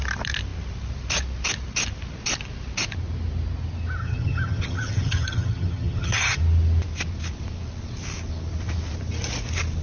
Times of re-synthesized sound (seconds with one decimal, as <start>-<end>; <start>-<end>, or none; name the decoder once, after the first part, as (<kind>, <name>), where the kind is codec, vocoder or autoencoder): 4.0-6.4 (vocoder, HiFi-GAN)